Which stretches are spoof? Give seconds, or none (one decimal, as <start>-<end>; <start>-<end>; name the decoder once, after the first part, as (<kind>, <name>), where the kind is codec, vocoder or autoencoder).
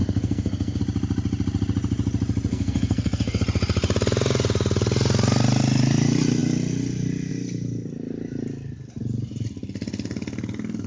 0.0-0.8 (codec, SNAC); 2.5-3.4